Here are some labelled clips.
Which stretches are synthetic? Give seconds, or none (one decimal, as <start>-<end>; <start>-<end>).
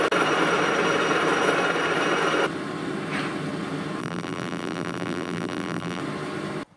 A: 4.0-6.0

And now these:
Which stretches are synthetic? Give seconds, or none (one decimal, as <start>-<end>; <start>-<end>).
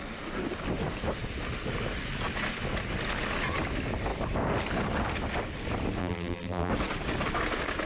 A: 6.0-6.7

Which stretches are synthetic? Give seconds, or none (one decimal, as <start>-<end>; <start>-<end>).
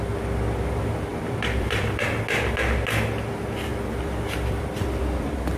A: 1.1-2.0; 3.7-5.6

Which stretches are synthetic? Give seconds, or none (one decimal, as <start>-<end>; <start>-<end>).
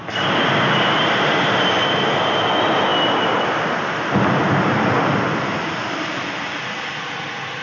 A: 2.9-7.0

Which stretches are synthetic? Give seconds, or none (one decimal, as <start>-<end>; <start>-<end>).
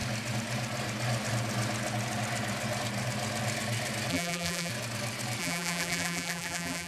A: 4.1-4.7; 5.4-6.9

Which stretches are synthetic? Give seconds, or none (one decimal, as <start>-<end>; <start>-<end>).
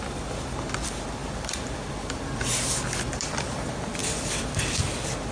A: none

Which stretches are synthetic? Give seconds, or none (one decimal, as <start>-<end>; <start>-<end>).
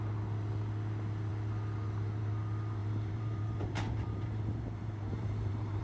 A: 2.8-5.8